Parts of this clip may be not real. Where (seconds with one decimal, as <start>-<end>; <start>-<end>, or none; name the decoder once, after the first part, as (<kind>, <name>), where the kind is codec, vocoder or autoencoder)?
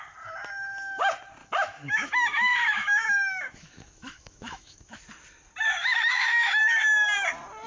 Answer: 1.4-5.0 (autoencoder, DAC-VAE); 5.8-6.6